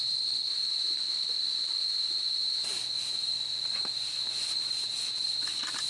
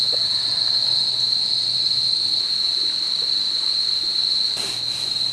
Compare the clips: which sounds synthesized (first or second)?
first